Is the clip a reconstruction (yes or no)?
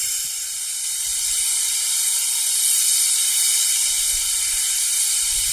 no